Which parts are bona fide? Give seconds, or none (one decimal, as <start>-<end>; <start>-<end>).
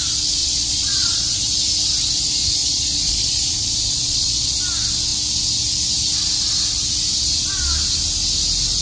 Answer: 0.0-0.4; 1.4-2.6; 4.6-8.8